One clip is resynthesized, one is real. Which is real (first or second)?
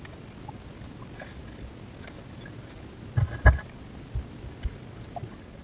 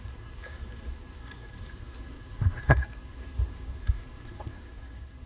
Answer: first